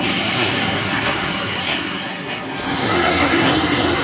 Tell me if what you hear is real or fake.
fake